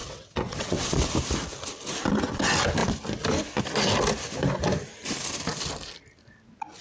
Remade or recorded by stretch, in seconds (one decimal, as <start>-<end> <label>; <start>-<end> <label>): 0.0-1.1 remade; 1.1-6.8 recorded